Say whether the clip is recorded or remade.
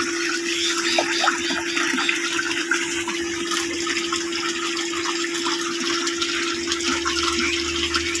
recorded